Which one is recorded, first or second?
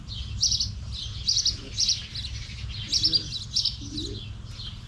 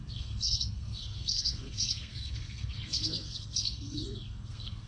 first